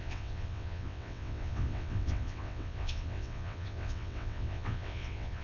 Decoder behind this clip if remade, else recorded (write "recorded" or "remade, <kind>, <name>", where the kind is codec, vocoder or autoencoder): remade, vocoder, WaveNeXt